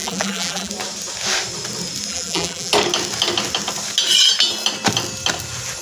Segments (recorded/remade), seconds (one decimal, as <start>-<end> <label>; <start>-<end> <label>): 0.0-0.7 remade; 0.7-2.1 recorded; 2.1-2.7 remade; 2.7-5.8 recorded